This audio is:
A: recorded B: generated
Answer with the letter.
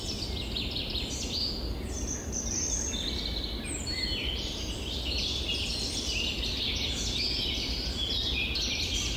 A